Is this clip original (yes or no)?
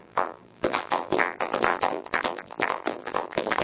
no